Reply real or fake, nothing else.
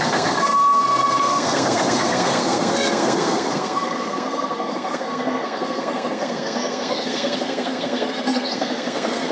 fake